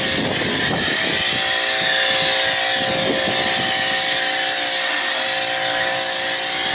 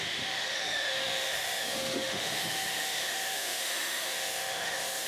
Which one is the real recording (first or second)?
first